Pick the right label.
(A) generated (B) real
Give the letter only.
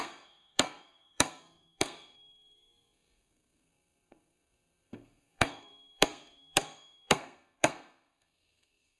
A